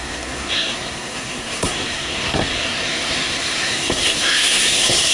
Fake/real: fake